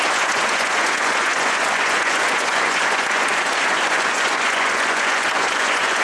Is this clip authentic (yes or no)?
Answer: no